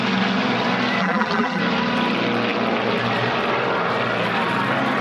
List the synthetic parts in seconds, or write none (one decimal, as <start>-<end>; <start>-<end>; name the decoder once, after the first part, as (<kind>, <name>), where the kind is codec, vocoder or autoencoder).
1.0-1.6 (vocoder, BigVGAN v2)